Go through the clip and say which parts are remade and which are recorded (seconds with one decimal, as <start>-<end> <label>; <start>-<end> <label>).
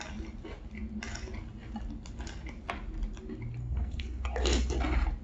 0.0-3.6 recorded; 3.6-4.2 remade; 4.2-5.2 recorded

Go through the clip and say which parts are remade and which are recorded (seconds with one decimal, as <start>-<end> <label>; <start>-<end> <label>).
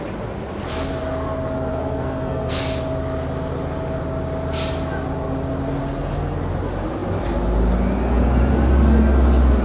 0.0-1.7 recorded; 1.7-2.6 remade; 2.6-9.6 recorded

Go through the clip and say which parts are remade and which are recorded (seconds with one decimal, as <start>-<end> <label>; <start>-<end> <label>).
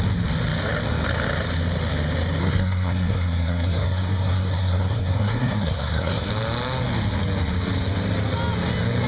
0.0-2.4 recorded; 2.4-6.3 remade; 6.3-9.1 recorded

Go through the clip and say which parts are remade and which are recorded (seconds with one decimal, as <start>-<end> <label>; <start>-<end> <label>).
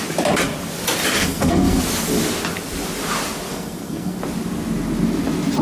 0.0-1.1 recorded; 1.1-1.8 remade; 1.8-3.5 recorded; 3.5-4.2 remade; 4.2-5.6 recorded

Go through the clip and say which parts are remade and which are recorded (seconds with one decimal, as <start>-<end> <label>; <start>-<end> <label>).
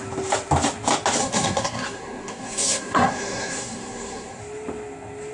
0.0-1.2 recorded; 1.2-4.4 remade; 4.4-5.3 recorded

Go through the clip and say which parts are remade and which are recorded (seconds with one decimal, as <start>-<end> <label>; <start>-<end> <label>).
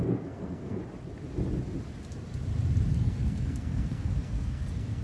0.0-0.8 remade; 0.8-2.9 recorded; 2.9-5.0 remade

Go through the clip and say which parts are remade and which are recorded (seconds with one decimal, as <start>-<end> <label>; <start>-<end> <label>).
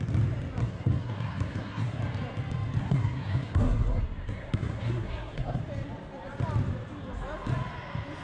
0.0-0.6 recorded; 0.6-2.0 remade; 2.0-2.8 recorded; 2.8-5.6 remade; 5.6-8.2 recorded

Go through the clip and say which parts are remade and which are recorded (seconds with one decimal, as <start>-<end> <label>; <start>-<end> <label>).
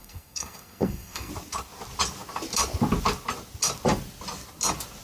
0.0-1.3 remade; 1.3-5.0 recorded